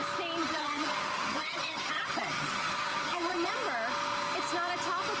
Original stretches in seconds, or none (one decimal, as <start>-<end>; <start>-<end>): 0.0-0.4; 3.5-5.2